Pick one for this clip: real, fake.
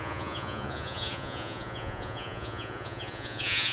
fake